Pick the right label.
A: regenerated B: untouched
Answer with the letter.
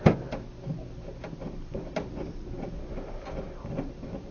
B